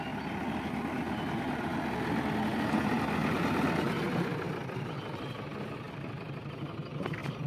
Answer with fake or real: fake